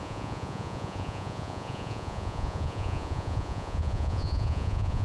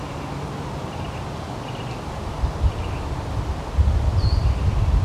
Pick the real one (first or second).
second